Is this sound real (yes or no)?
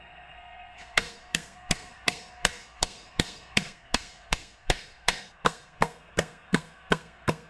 no